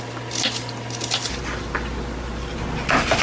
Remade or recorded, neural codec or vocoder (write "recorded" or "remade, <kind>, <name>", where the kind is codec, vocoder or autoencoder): recorded